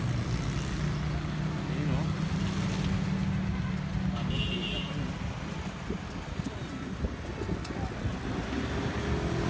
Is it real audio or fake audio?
real